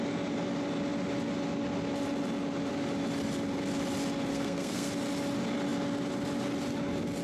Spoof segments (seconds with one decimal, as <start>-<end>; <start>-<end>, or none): 4.3-4.9